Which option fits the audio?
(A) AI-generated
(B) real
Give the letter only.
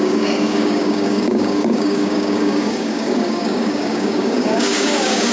A